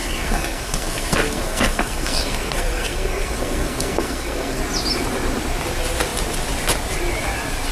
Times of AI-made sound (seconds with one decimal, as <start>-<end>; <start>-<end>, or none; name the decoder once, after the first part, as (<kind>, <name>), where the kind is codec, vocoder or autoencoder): 0.0-4.6 (codec, SNAC)